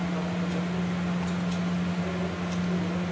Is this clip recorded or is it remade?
recorded